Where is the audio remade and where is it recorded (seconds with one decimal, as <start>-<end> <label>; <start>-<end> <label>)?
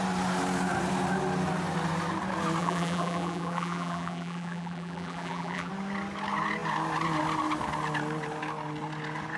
0.0-2.6 recorded; 2.6-5.7 remade; 5.7-9.4 recorded